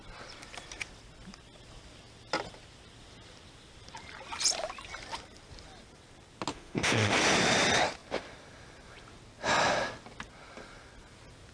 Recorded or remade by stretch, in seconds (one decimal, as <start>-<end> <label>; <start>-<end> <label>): 0.0-6.5 recorded; 6.5-7.1 remade; 7.1-11.5 recorded